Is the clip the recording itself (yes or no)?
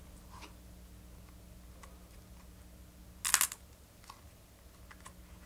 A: yes